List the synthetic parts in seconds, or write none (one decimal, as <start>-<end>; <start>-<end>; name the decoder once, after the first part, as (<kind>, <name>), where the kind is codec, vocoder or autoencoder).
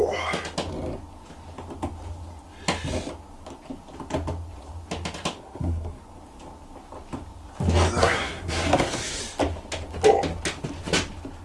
5.4-6.0 (codec, SNAC); 8.0-9.2